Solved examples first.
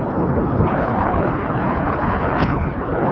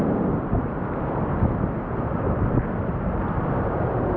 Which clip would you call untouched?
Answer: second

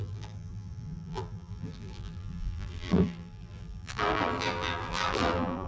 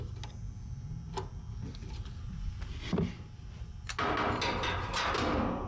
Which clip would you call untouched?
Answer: second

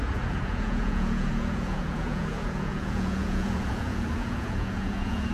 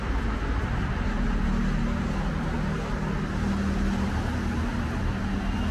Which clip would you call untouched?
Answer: second